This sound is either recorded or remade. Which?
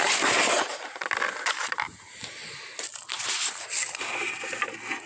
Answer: recorded